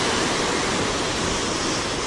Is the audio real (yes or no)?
yes